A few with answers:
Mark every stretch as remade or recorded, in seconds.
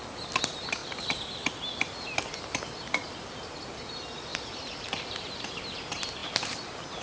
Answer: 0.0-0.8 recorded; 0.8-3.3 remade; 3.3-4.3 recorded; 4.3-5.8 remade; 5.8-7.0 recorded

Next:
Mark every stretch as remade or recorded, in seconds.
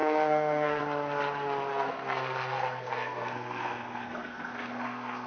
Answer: 0.0-0.8 remade; 0.8-1.7 recorded; 1.7-5.3 remade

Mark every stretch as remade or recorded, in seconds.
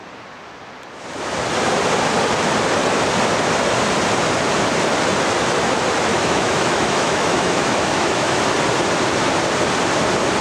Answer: 0.0-6.1 recorded; 6.1-8.4 remade; 8.4-10.4 recorded